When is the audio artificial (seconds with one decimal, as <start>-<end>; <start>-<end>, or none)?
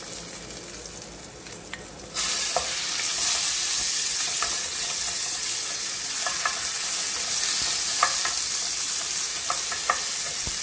4.0-5.9